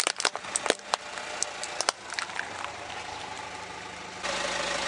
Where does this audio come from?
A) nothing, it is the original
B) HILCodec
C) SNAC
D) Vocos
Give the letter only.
A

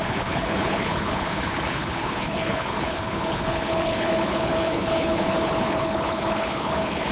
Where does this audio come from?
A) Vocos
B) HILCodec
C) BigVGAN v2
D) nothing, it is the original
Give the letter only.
B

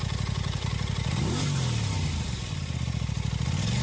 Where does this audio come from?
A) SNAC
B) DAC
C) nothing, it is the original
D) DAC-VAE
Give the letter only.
C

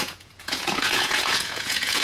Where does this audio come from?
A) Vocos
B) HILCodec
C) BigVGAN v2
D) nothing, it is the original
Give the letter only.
A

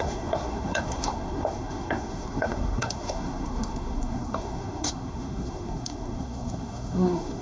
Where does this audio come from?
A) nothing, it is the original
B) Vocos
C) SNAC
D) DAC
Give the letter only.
C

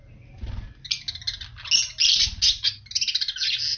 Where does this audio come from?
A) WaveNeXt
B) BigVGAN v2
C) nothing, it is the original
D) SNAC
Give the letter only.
C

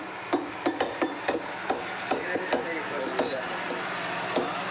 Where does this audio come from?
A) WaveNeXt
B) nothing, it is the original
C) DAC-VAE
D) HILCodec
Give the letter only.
B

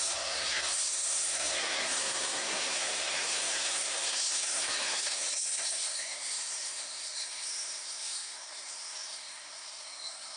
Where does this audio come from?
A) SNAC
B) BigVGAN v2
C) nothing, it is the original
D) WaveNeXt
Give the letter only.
A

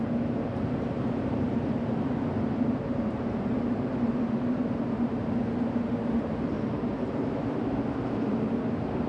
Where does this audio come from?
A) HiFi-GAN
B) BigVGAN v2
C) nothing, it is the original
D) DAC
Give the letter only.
B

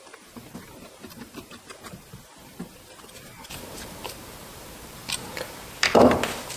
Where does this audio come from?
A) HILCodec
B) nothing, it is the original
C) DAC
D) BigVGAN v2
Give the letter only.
D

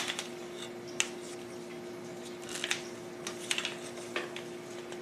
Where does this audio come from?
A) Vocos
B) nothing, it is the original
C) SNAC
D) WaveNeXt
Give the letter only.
B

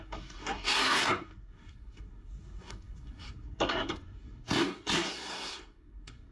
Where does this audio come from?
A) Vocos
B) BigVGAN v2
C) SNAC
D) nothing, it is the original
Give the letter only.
C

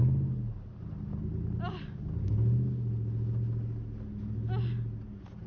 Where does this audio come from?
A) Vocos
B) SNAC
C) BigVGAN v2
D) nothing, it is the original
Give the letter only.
D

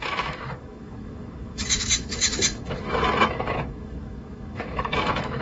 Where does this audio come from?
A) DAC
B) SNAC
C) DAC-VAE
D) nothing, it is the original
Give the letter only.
C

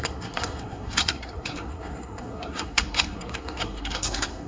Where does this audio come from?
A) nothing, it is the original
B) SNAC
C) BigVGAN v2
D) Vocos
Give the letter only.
B